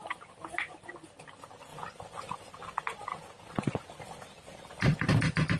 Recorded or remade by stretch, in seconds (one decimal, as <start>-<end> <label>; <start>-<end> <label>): 0.0-5.6 recorded